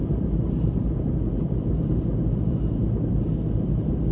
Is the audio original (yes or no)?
yes